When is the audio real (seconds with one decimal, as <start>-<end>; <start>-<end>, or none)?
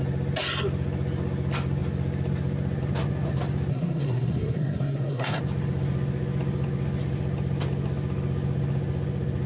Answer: 0.0-3.7; 5.4-9.5